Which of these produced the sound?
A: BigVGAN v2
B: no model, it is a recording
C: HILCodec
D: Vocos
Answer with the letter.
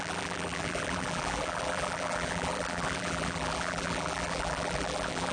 A